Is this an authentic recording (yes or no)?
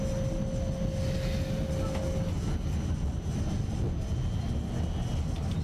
yes